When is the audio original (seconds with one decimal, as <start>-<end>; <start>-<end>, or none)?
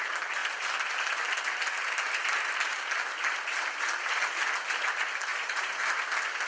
0.0-5.3; 5.8-6.5